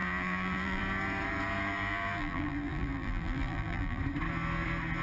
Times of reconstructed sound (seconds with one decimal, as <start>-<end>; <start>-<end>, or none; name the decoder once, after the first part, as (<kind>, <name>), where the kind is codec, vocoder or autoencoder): 0.0-0.8 (vocoder, BigVGAN v2); 1.7-4.0